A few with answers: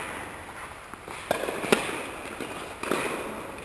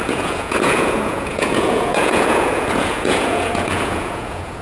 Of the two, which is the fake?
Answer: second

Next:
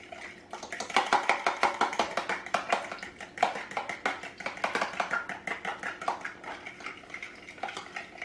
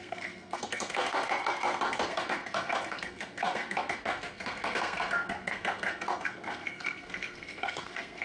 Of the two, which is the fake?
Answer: second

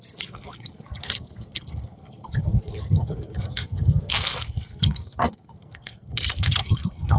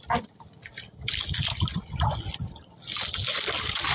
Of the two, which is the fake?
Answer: first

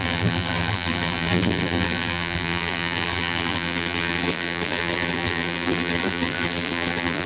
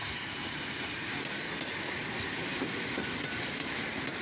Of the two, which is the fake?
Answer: first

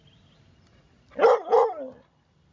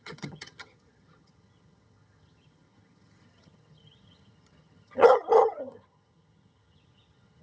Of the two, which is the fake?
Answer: second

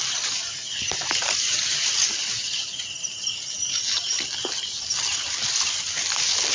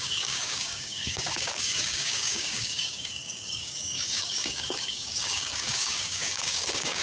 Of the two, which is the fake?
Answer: second